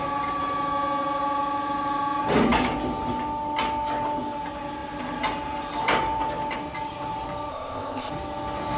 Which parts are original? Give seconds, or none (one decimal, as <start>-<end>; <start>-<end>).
0.0-7.5; 8.1-8.8